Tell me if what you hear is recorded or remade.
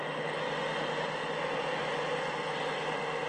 recorded